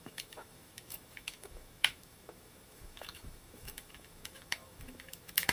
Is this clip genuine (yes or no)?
no